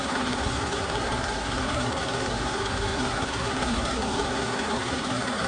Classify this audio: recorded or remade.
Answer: remade